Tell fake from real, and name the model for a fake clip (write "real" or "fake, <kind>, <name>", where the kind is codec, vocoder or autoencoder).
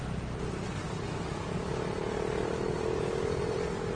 real